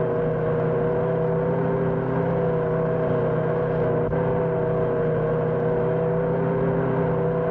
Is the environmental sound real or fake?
real